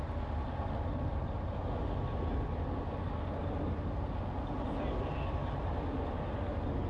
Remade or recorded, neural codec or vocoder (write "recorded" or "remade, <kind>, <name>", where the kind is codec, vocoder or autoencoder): recorded